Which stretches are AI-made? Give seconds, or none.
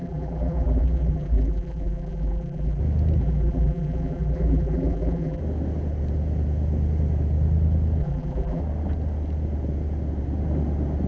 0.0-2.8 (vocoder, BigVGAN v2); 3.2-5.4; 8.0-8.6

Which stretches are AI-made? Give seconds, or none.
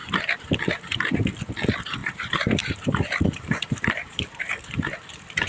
0.0-0.6 (vocoder, BigVGAN v2); 2.0-4.4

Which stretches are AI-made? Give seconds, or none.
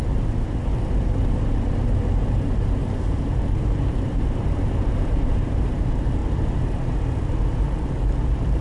0.0-6.2 (vocoder, BigVGAN v2); 7.6-8.6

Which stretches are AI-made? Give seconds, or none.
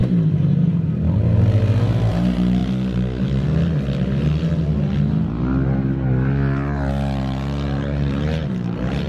2.1-2.6 (vocoder, BigVGAN v2); 7.8-9.1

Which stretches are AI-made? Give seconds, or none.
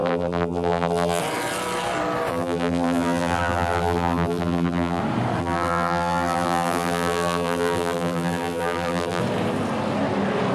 0.0-1.2 (vocoder, BigVGAN v2); 2.3-5.0; 5.4-9.2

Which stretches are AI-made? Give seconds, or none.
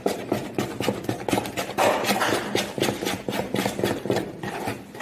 0.4-1.1 (vocoder, BigVGAN v2); 2.3-5.0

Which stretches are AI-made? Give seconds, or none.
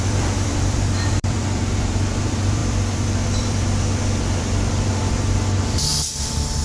0.0-5.9 (vocoder, BigVGAN v2)